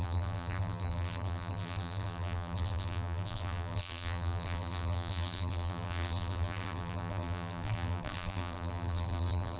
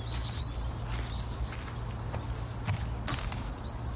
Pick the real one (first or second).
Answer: second